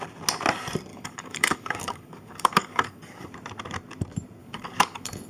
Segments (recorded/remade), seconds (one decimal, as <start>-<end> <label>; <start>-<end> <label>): 0.0-0.9 recorded; 0.9-3.3 remade; 3.3-4.4 recorded; 4.4-5.3 remade